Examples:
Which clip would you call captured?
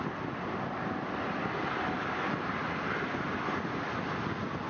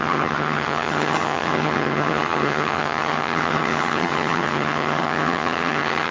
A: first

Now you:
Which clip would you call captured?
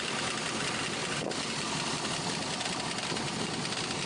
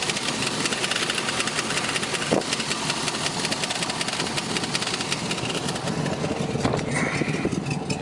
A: second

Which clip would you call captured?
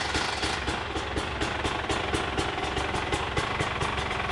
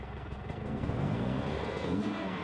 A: first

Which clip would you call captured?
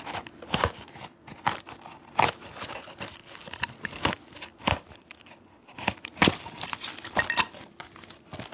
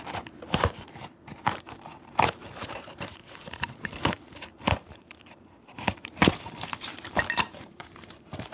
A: first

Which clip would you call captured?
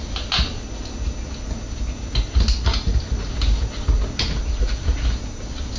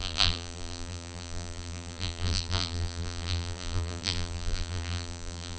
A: first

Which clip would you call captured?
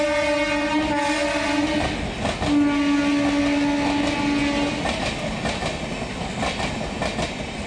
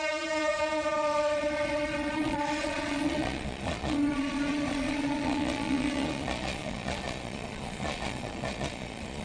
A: first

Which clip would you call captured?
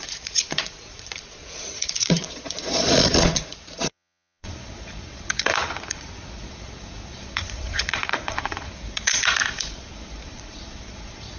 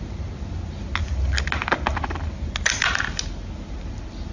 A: second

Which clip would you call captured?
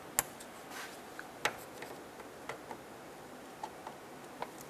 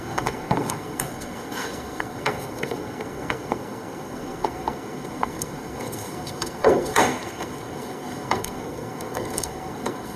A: first